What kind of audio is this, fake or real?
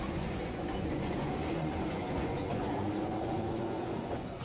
fake